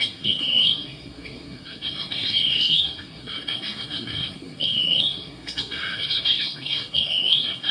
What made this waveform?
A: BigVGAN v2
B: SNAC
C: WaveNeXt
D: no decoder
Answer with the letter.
B